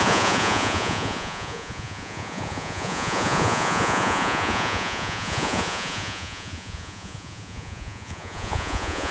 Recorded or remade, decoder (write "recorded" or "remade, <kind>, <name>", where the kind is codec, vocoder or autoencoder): remade, vocoder, Vocos